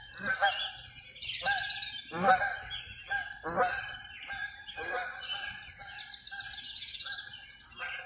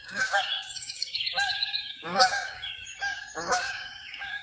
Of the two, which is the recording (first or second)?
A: first